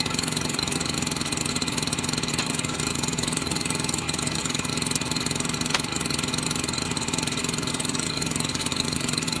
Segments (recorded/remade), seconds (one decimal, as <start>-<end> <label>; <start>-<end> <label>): 0.0-0.8 remade; 0.8-2.4 recorded; 2.4-4.7 remade; 4.7-7.7 recorded; 7.7-9.4 remade